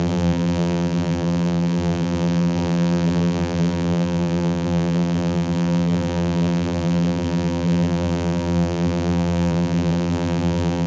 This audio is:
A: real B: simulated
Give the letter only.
B